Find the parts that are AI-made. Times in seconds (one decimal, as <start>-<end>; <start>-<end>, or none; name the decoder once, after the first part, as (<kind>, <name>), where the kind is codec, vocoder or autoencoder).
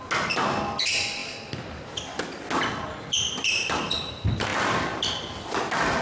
none